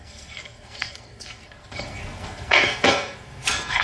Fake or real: fake